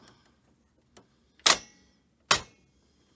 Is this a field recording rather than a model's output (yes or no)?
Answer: yes